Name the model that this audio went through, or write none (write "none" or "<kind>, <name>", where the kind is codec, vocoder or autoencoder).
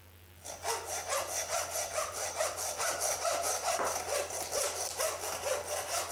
none